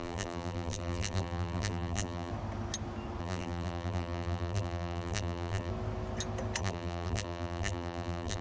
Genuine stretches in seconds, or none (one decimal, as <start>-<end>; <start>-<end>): 2.3-3.2; 5.7-6.6